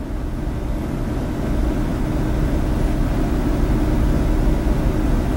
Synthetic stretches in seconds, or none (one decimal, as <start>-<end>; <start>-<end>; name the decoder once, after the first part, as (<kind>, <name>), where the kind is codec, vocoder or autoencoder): none